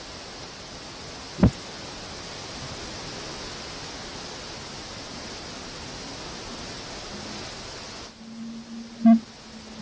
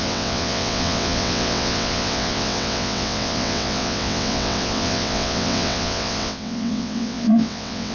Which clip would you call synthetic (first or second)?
second